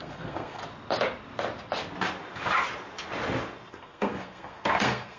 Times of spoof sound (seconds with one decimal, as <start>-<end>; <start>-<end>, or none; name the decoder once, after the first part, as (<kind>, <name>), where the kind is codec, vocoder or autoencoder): 0.0-0.6 (codec, SNAC); 3.7-5.2